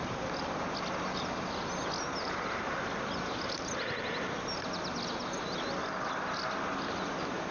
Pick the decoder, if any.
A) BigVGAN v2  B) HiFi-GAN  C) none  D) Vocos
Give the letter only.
C